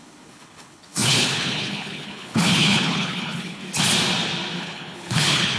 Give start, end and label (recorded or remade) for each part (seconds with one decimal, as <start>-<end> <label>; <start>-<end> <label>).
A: 0.0-3.6 remade; 3.6-4.6 recorded; 4.6-5.6 remade